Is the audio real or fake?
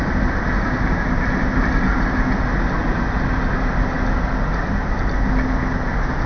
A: real